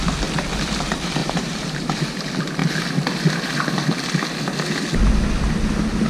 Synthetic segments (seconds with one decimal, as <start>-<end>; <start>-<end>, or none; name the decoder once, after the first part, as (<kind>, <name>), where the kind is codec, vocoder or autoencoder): 1.2-2.0 (vocoder, BigVGAN v2)